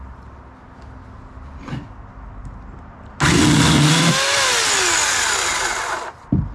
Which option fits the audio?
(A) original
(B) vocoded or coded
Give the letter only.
A